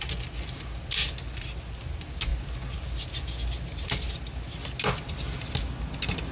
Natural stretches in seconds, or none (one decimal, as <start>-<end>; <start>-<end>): 0.0-6.3